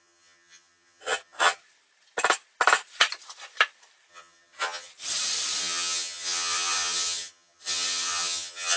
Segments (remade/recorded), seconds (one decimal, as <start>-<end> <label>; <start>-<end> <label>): 0.0-1.6 remade; 1.6-4.1 recorded; 4.1-4.9 remade; 4.9-5.6 recorded; 5.6-8.8 remade